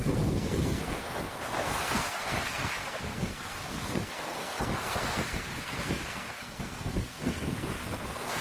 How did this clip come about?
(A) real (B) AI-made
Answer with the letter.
B